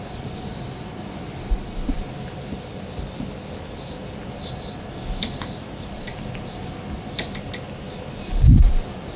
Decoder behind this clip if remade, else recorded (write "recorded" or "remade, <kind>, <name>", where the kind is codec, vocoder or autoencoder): recorded